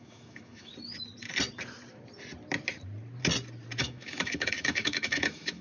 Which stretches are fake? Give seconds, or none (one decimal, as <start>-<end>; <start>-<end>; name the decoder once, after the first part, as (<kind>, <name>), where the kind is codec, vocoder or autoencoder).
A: 0.0-0.7 (autoencoder, DAC-VAE); 3.8-5.6